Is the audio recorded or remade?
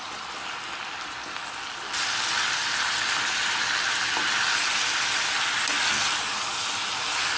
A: recorded